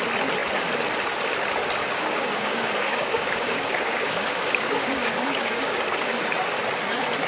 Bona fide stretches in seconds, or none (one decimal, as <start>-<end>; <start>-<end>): 0.0-1.8; 6.2-7.3